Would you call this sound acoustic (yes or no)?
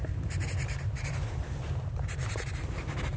no